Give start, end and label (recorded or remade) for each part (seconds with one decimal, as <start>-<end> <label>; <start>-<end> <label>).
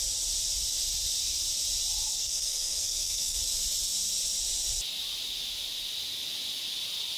0.0-2.1 recorded; 2.1-3.4 remade; 3.4-7.2 recorded